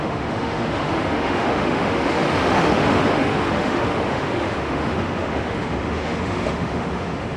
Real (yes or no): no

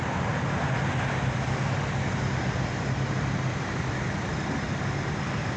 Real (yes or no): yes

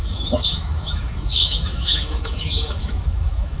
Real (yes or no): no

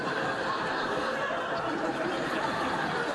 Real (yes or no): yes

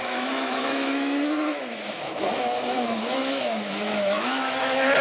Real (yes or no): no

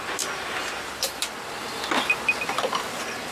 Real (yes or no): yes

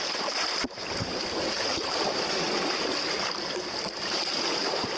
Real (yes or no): yes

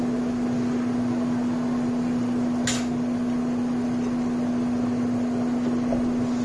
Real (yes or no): yes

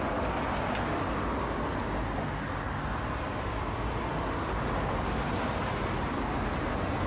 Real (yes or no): yes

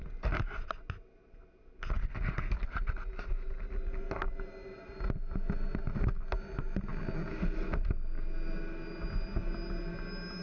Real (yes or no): yes